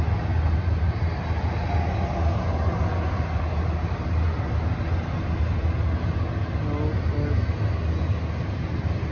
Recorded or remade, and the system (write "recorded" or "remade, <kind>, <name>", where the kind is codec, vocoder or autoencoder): recorded